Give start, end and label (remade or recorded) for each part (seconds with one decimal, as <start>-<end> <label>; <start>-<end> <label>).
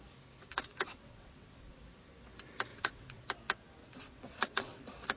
0.0-0.4 recorded; 0.4-1.8 remade; 1.8-2.7 recorded; 2.7-3.2 remade; 3.2-3.8 recorded; 3.8-4.8 remade; 4.8-5.2 recorded